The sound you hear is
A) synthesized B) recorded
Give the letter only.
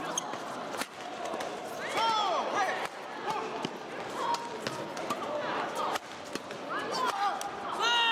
B